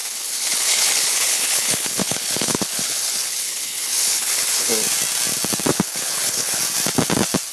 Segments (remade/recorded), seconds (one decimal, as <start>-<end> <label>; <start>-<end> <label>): 0.0-4.7 remade; 4.7-5.7 recorded; 5.7-6.6 remade; 6.6-7.5 recorded